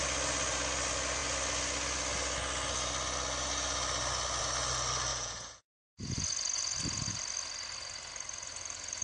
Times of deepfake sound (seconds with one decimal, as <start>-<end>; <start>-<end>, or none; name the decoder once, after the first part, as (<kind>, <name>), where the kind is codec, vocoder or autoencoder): 5.1-6.0 (vocoder, Vocos)